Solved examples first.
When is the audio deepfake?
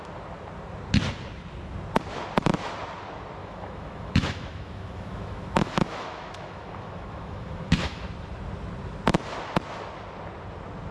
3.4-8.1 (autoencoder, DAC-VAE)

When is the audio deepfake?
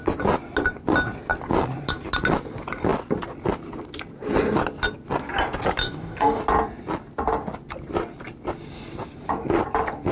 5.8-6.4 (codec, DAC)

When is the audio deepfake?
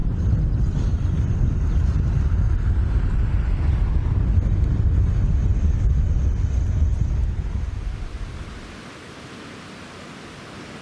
0.0-1.5 (vocoder, BigVGAN v2)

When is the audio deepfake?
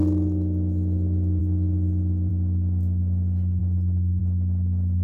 none